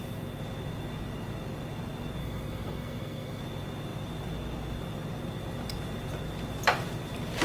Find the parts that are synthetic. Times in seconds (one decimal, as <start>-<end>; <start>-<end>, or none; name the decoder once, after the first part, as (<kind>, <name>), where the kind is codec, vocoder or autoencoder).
2.2-3.4 (codec, SNAC)